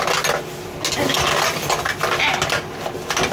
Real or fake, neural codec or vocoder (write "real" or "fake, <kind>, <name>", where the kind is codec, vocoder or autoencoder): real